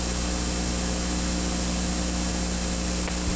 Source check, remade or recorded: recorded